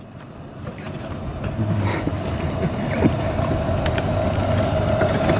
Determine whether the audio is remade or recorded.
recorded